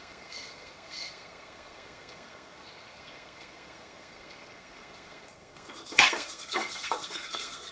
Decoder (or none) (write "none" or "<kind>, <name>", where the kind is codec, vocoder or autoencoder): codec, SNAC